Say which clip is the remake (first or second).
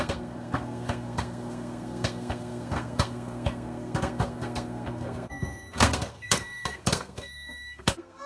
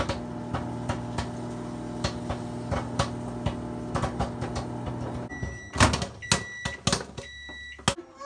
first